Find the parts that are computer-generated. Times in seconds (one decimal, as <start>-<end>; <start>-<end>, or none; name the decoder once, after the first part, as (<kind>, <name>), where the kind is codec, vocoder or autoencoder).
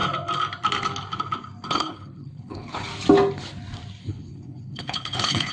1.7-2.9 (codec, HILCodec); 4.0-5.5